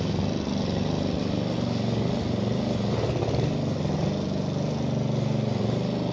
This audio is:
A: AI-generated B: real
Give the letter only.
B